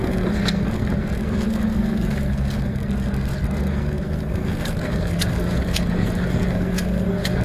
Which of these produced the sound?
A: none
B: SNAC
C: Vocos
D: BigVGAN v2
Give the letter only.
B